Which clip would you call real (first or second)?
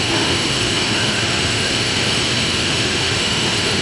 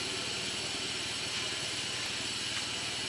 second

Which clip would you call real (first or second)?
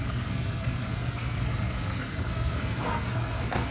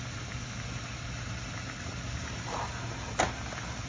second